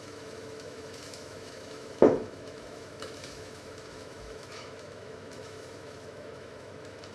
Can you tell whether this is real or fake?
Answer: fake